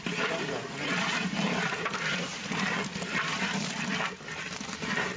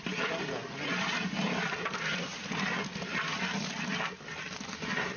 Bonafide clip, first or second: second